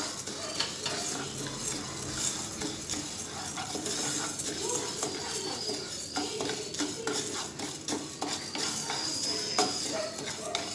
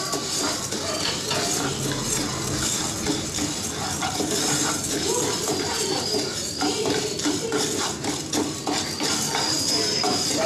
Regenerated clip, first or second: second